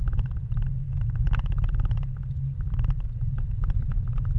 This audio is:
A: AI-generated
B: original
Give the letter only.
A